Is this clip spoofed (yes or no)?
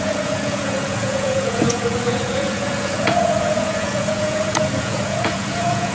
yes